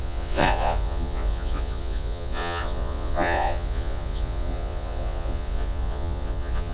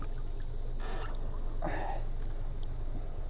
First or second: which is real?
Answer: second